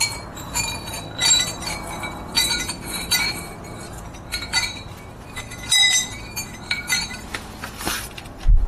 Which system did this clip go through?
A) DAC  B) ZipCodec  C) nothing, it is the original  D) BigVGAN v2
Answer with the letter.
D